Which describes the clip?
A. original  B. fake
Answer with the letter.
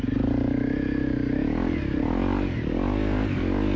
A